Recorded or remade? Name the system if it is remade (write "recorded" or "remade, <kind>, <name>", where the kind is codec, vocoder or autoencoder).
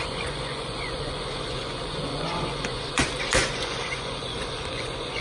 remade, vocoder, Vocos